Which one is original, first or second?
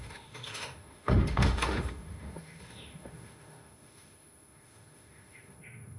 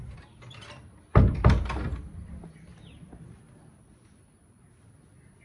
second